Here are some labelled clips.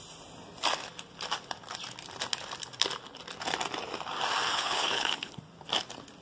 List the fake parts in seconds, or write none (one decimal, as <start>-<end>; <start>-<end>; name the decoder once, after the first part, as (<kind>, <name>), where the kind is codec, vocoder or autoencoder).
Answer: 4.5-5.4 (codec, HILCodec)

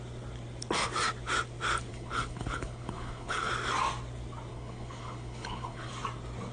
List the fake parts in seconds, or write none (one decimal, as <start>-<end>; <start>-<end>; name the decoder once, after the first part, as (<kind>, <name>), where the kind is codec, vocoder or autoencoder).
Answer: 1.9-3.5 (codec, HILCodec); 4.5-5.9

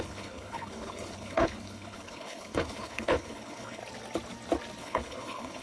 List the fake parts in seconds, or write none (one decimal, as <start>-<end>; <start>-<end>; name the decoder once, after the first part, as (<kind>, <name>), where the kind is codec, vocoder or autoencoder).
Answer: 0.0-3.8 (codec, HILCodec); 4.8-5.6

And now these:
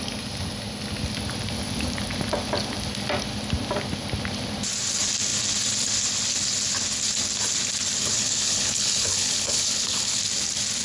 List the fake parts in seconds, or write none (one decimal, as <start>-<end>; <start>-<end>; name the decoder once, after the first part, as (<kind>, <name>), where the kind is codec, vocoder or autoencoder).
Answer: 8.0-10.2 (codec, HILCodec)

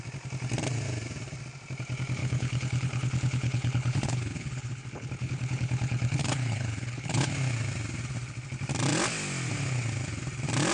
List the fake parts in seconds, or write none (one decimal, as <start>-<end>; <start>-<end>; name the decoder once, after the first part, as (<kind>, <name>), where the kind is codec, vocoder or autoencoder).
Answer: 2.2-7.3 (codec, HILCodec)

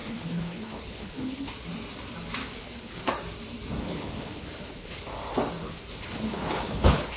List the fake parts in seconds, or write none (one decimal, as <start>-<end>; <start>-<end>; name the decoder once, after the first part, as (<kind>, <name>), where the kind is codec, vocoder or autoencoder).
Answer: 0.0-1.5 (codec, HILCodec); 2.4-3.1; 3.8-5.0; 5.6-7.2

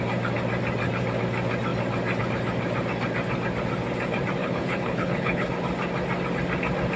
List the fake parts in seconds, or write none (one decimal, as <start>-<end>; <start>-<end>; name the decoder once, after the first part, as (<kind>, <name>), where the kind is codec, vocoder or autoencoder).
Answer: 4.4-5.5 (codec, HILCodec)

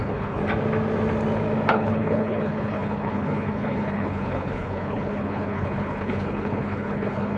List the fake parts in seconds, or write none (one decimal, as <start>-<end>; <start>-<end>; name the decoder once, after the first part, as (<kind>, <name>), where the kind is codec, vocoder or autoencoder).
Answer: 0.0-0.4 (codec, HILCodec); 1.7-7.4